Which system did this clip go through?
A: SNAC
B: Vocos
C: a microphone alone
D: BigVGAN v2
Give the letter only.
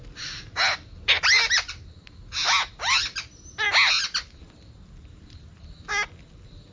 C